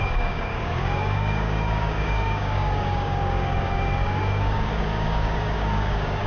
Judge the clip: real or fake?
fake